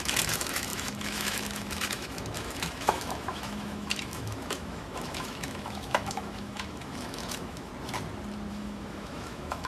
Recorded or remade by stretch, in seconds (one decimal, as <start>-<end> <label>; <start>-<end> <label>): 0.0-7.7 remade; 7.7-8.5 recorded; 8.5-9.7 remade

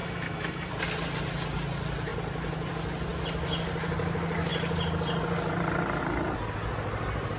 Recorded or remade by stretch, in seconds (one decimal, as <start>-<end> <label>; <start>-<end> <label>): 0.0-0.7 remade; 0.7-7.4 recorded

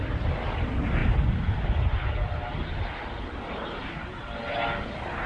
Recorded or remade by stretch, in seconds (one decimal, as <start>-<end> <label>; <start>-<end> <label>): 0.0-5.3 recorded

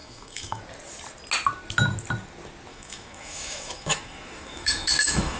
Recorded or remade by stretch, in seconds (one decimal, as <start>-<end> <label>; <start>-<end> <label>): 0.0-0.6 remade; 0.6-2.7 recorded; 2.7-5.4 remade

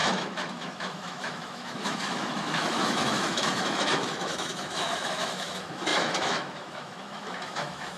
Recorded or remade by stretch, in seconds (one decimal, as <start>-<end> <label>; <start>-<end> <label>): 0.0-8.0 remade

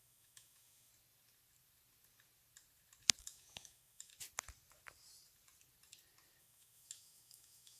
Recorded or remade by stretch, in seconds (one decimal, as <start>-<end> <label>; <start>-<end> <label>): 0.0-0.9 remade; 0.9-3.2 recorded; 3.2-4.1 remade; 4.1-6.4 recorded; 6.4-7.8 remade